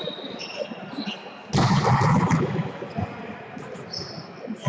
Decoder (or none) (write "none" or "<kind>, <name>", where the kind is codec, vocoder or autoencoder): none